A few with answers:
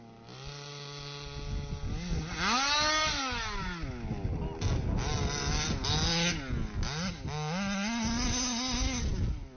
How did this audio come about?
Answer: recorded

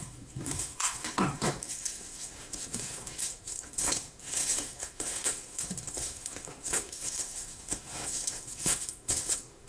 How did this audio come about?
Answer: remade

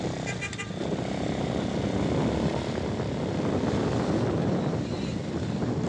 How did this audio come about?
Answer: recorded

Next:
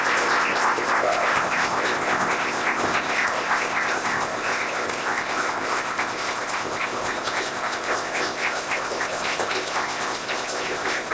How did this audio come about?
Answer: remade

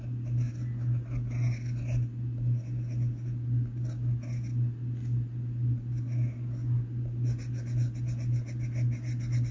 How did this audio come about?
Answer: recorded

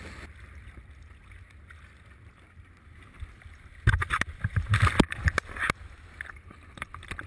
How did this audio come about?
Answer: recorded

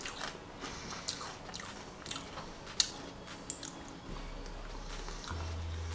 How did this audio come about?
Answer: recorded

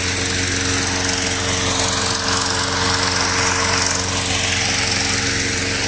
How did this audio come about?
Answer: recorded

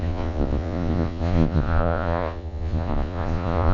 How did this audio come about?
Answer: remade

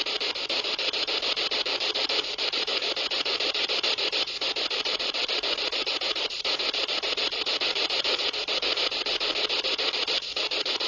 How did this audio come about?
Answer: recorded